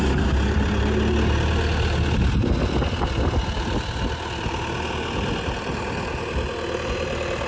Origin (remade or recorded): recorded